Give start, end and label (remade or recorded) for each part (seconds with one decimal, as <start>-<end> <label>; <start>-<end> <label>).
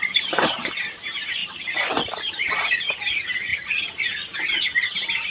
0.0-3.5 remade; 3.5-4.4 recorded; 4.4-5.3 remade